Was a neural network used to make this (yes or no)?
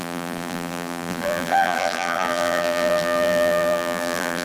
yes